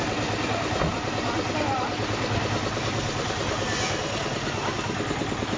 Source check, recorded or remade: recorded